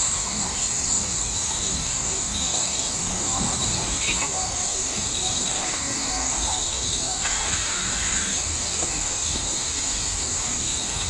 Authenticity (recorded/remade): remade